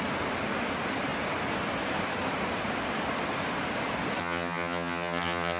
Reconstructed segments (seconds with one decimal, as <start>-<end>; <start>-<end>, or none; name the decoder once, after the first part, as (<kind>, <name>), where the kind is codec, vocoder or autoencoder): 4.2-5.6 (vocoder, HiFi-GAN)